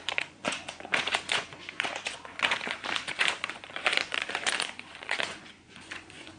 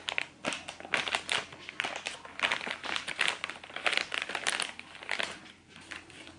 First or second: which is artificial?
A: first